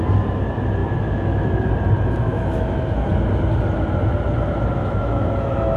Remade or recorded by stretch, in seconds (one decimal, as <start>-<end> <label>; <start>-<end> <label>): 0.0-0.8 recorded; 0.8-1.7 remade; 1.7-2.3 recorded; 2.3-3.1 remade; 3.1-4.8 recorded; 4.8-5.8 remade